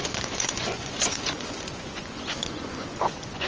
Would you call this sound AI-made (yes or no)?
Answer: yes